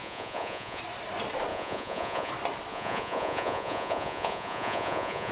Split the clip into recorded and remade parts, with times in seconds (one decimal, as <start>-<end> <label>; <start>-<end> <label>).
0.0-0.8 remade; 0.8-1.5 recorded; 1.5-2.3 remade; 2.3-2.7 recorded; 2.7-5.3 remade